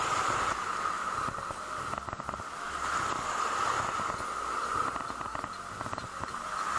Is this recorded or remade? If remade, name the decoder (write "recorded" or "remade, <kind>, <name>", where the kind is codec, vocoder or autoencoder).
recorded